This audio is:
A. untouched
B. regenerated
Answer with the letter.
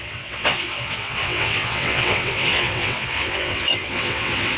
B